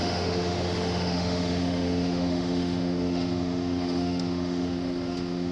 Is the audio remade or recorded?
remade